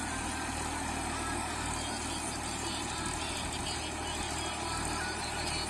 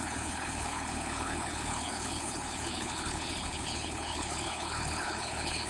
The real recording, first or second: first